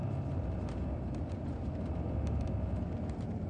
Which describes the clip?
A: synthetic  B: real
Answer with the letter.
A